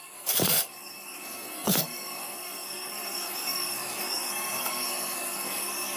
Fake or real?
fake